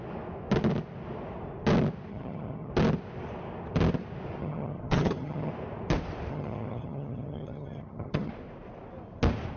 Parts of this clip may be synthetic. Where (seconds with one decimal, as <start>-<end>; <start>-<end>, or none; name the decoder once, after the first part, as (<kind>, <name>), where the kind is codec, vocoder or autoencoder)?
2.1-2.7 (vocoder, HiFi-GAN); 4.4-5.5; 6.3-8.3